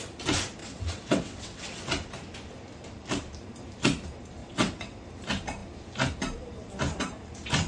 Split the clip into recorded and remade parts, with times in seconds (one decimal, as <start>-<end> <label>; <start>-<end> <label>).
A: 0.0-0.6 recorded; 0.6-1.8 remade; 1.8-4.4 recorded; 4.4-5.0 remade; 5.0-7.7 recorded